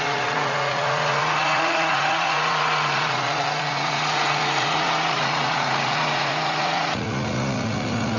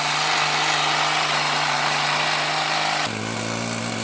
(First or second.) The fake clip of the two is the first